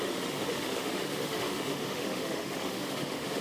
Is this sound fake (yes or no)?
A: yes